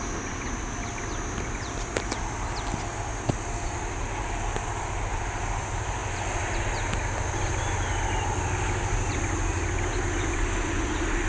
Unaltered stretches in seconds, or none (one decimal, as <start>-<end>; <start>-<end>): 0.0-11.3